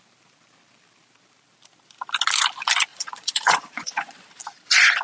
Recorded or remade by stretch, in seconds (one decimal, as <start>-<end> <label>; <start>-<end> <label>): 0.0-2.9 recorded; 2.9-4.4 remade; 4.4-5.0 recorded